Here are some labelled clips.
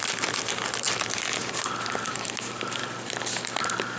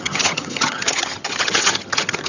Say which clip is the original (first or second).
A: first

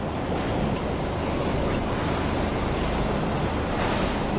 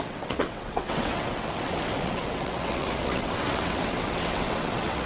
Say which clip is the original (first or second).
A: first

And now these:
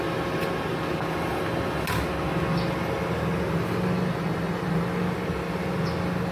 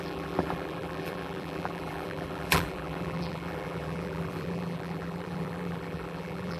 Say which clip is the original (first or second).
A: first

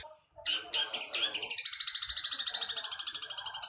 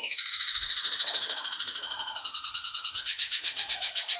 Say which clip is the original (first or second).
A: first